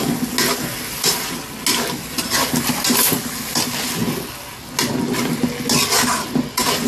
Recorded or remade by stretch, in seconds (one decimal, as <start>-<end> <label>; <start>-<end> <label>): 0.0-6.9 recorded